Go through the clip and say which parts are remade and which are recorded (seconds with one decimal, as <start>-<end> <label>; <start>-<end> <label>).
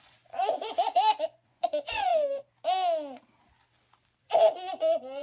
0.0-2.1 remade; 2.1-4.2 recorded; 4.2-5.2 remade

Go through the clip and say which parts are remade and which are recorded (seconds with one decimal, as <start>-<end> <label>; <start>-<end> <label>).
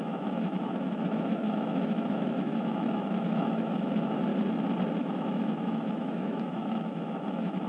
0.0-4.3 remade; 4.3-5.0 recorded; 5.0-7.7 remade